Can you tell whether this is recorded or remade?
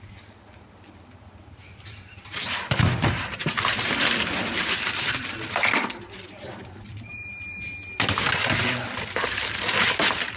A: remade